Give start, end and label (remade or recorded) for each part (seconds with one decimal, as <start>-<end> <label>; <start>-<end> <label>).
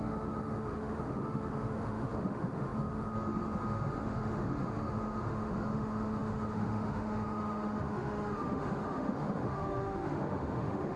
0.0-11.0 remade